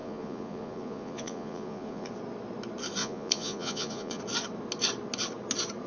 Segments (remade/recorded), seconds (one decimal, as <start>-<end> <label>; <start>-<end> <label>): 0.0-2.1 remade; 2.1-3.0 recorded; 3.0-4.2 remade; 4.2-5.9 recorded